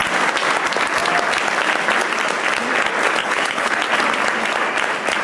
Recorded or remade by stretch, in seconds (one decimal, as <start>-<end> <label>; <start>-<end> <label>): 0.0-3.2 recorded; 3.2-3.8 remade; 3.8-5.2 recorded